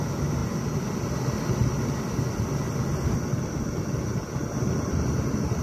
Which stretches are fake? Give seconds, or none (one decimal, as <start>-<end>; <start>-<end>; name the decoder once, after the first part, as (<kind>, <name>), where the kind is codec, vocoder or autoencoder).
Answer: none